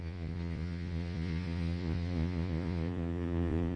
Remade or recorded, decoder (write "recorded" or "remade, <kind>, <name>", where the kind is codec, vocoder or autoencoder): remade, vocoder, Vocos